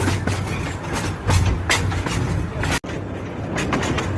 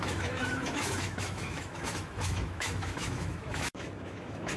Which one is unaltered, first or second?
first